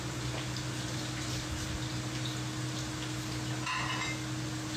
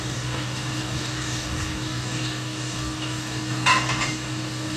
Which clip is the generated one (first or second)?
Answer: second